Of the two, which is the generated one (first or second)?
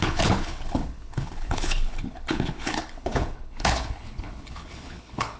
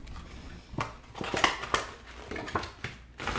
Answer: first